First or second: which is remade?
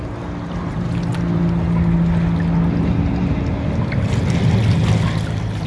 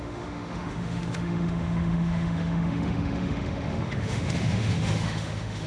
second